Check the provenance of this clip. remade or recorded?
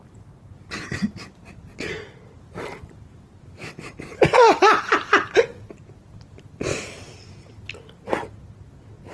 recorded